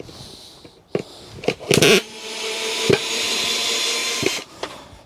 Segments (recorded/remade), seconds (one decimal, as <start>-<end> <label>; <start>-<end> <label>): 0.0-4.0 recorded; 4.0-5.1 remade